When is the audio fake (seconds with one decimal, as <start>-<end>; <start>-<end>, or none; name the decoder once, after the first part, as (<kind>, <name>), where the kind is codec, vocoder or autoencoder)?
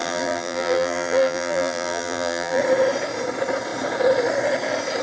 0.0-2.6 (vocoder, BigVGAN v2)